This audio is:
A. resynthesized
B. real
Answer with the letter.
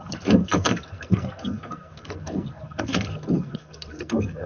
A